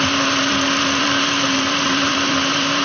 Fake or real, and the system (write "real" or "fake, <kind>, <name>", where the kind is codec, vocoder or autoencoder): fake, vocoder, BigVGAN v2